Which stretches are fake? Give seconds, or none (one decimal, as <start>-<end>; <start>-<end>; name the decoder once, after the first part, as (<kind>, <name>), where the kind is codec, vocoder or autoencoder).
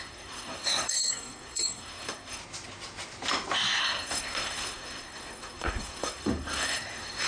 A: 0.0-2.4 (codec, SNAC); 3.8-7.3